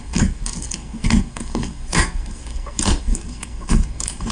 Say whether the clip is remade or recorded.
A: remade